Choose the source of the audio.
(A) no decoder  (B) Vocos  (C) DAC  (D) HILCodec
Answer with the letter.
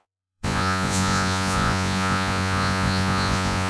B